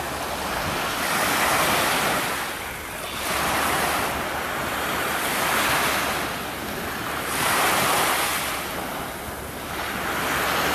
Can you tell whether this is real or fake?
real